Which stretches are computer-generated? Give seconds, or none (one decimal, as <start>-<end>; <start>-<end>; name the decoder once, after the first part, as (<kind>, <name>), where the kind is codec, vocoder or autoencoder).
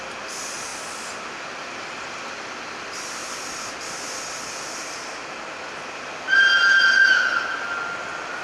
3.2-3.8 (vocoder, BigVGAN v2)